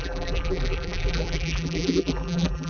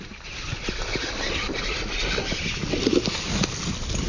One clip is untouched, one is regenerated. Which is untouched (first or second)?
second